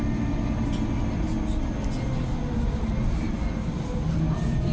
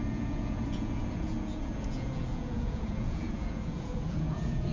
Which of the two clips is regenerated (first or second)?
second